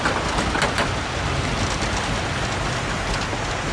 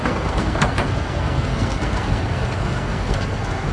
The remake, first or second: second